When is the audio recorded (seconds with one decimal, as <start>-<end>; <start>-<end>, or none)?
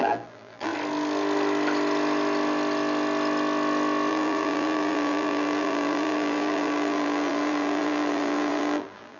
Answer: 0.7-4.1